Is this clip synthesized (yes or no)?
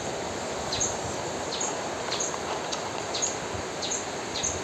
no